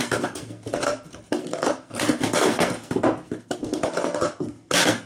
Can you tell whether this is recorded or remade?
remade